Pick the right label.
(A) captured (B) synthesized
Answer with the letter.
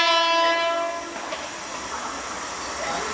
A